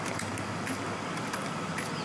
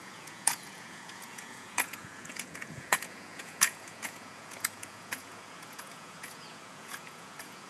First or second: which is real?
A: first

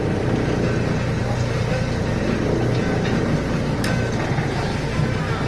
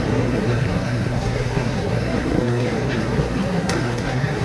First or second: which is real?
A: first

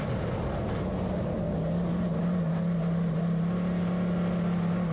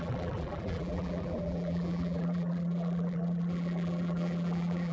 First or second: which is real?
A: first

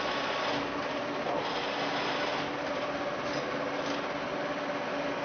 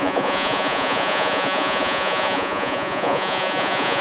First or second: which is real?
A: first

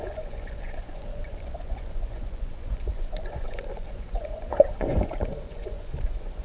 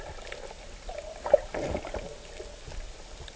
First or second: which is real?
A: second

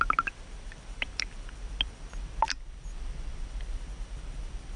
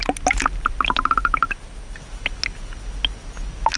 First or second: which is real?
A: second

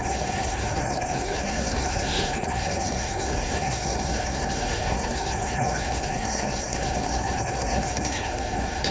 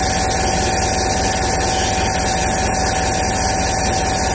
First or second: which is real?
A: second